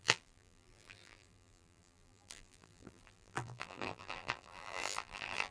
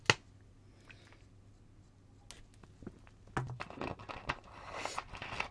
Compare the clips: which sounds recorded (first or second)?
second